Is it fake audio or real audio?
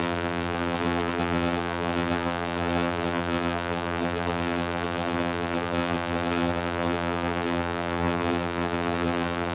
fake